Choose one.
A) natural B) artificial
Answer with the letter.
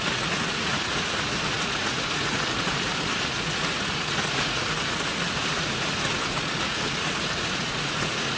B